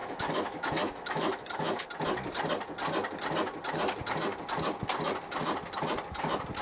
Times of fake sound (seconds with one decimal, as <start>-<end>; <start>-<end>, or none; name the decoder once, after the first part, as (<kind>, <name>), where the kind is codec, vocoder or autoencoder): 0.0-1.8 (autoencoder, DAC-VAE)